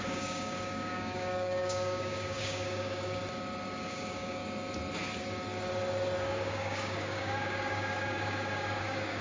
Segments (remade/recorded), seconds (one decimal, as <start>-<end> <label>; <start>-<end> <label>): 0.0-3.2 remade; 3.2-3.8 recorded; 3.8-4.4 remade; 4.4-6.2 recorded; 6.2-9.2 remade

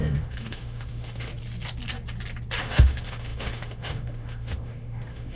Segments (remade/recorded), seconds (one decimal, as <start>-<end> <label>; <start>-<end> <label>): 0.0-1.3 remade; 1.3-2.6 recorded; 2.6-5.3 remade

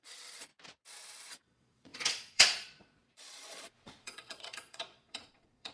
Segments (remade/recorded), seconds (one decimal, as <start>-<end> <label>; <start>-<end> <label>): 0.0-0.5 remade; 0.5-1.3 recorded; 1.3-5.7 remade

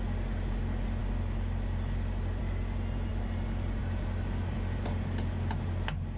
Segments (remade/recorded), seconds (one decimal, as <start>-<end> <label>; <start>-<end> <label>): 0.0-6.2 recorded

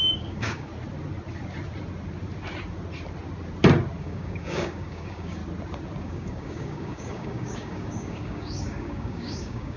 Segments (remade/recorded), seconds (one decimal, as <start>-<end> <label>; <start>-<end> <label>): 0.0-0.7 remade; 0.7-4.0 recorded; 4.0-5.4 remade; 5.4-6.0 recorded; 6.0-9.8 remade

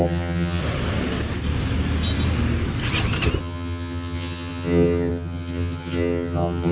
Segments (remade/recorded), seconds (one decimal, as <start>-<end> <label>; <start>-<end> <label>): 0.0-0.6 remade; 0.6-3.4 recorded; 3.4-6.7 remade

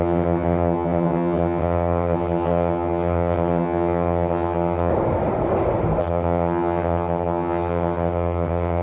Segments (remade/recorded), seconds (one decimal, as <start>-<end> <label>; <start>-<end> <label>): 0.0-4.9 remade; 4.9-6.0 recorded; 6.0-8.8 remade

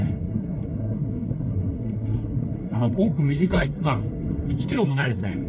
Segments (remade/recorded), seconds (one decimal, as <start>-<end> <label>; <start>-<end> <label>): 0.0-5.5 remade